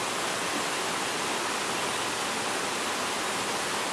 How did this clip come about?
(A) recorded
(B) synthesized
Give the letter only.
A